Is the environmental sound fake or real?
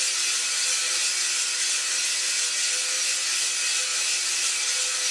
real